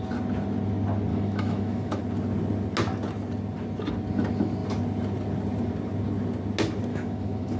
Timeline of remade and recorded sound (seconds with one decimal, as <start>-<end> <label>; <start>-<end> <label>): 0.0-1.1 recorded; 1.1-2.0 remade; 2.0-6.9 recorded; 6.9-7.6 remade